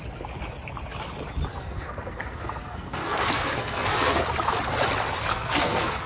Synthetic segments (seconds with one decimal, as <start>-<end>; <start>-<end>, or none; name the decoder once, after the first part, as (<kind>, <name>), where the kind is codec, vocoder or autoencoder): 1.5-4.2 (codec, SNAC); 5.3-6.1